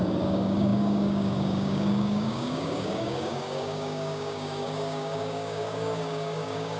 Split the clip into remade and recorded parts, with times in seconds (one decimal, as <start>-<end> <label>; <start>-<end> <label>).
0.0-6.8 remade